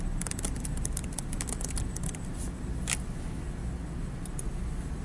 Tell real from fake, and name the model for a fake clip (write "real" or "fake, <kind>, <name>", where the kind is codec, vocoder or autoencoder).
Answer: real